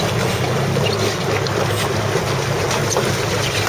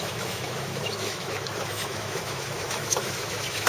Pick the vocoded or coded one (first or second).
second